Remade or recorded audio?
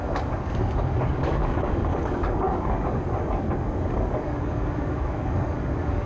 remade